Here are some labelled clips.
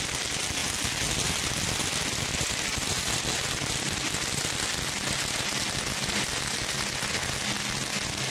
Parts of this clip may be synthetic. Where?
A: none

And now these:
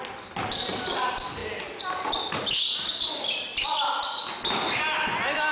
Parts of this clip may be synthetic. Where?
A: none

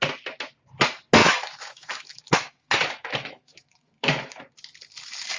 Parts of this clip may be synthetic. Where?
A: 1.2-4.4 (autoencoder, DAC-VAE)

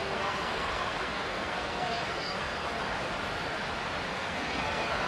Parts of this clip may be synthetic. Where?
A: 0.0-2.8 (codec, SNAC); 4.1-5.1

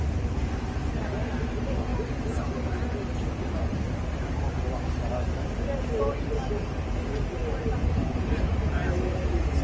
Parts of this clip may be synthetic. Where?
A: none

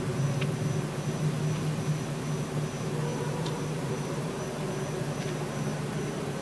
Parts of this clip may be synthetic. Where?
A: 3.1-4.4 (vocoder, BigVGAN v2); 5.7-6.4

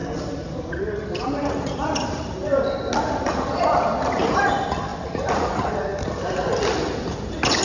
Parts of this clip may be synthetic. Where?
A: 0.0-4.5 (vocoder, BigVGAN v2); 4.9-5.7